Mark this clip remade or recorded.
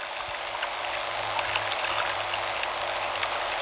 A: recorded